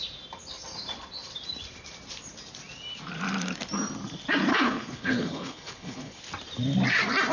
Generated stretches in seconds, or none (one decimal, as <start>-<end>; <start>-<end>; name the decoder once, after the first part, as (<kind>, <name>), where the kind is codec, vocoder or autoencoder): 4.5-6.2 (codec, HILCodec)